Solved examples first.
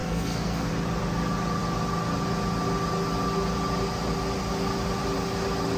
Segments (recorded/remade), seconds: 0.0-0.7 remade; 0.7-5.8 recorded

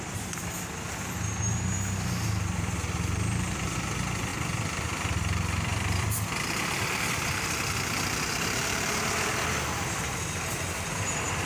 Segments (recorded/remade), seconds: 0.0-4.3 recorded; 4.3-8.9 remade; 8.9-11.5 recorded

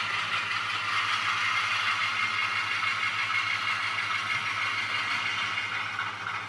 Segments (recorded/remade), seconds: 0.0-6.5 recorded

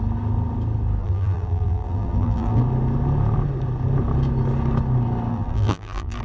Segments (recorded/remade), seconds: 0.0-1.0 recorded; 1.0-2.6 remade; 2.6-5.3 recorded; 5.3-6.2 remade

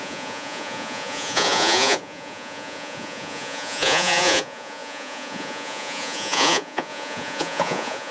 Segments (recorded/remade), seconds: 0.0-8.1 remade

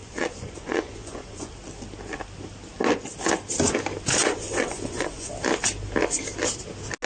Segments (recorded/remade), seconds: 0.0-1.5 remade; 1.5-4.2 recorded; 4.2-5.3 remade; 5.3-7.1 recorded

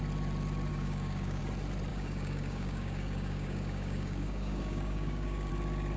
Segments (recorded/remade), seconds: 0.0-0.7 recorded; 0.7-1.4 remade; 1.4-1.9 recorded; 1.9-5.5 remade; 5.5-6.0 recorded